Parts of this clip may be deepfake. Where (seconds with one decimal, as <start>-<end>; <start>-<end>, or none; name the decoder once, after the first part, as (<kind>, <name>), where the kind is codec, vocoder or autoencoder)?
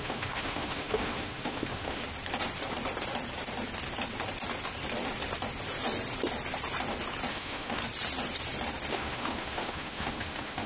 0.0-2.0 (autoencoder, DAC-VAE); 7.3-7.8; 8.9-10.7